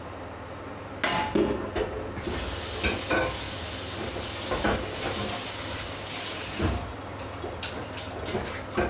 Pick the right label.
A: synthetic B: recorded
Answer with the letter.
B